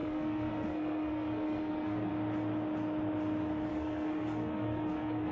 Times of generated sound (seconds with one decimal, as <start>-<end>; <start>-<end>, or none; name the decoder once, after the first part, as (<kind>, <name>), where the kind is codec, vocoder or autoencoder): 0.0-2.1 (codec, SNAC); 3.7-5.3